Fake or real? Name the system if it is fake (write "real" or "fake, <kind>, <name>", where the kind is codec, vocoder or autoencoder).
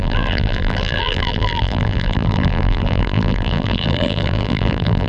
fake, vocoder, BigVGAN v2